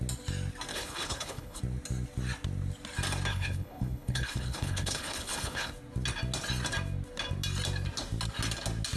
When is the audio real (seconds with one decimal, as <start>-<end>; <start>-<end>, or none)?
0.0-0.7; 1.6-3.3; 5.7-9.0